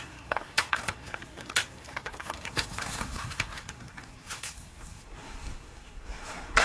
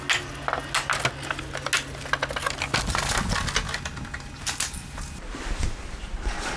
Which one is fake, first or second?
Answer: first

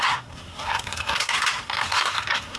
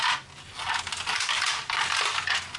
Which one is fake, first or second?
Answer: first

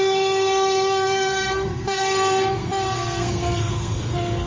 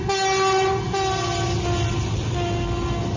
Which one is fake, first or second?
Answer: first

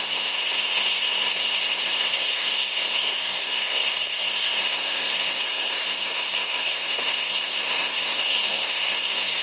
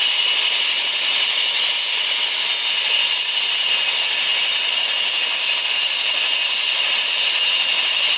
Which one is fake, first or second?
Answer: first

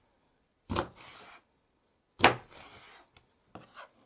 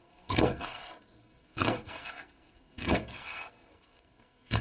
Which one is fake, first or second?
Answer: second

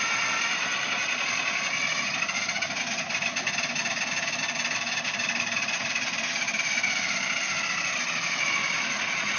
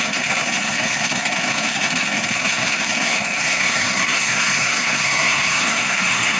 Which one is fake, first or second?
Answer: second